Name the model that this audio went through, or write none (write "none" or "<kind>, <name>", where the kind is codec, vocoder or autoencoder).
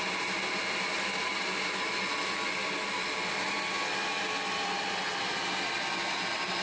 none